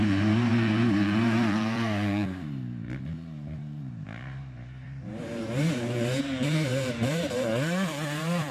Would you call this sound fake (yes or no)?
yes